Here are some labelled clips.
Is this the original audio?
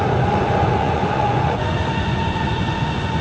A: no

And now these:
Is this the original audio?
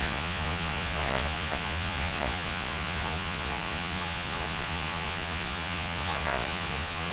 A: no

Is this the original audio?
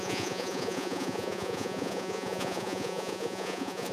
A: no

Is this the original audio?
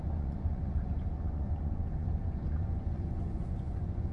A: no